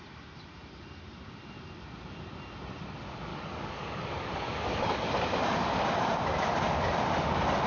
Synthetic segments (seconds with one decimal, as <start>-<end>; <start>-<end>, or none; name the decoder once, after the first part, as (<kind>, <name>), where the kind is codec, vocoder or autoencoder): 3.3-5.1 (codec, DAC)